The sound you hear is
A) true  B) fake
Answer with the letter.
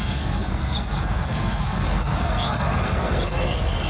B